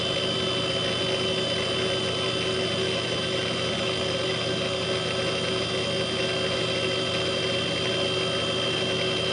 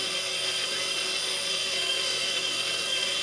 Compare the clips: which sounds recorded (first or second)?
first